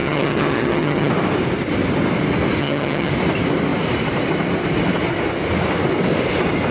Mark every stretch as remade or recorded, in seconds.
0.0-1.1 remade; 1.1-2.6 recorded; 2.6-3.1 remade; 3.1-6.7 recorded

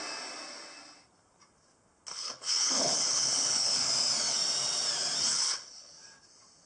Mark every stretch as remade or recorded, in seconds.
0.0-2.1 recorded; 2.1-3.9 remade; 3.9-5.3 recorded; 5.3-5.9 remade; 5.9-6.7 recorded